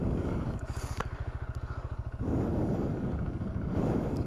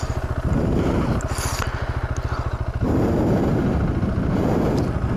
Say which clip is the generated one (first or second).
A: first